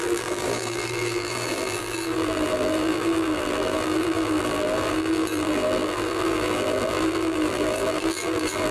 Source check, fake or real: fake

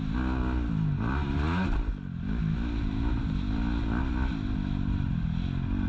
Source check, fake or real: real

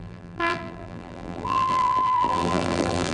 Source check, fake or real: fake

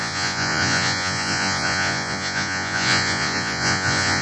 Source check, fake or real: fake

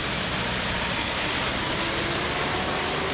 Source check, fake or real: real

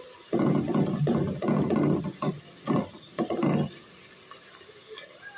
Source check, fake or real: real